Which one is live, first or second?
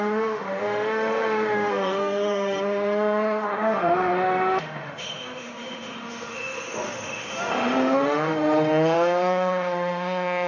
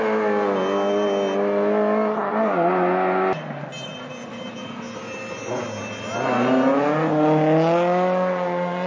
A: second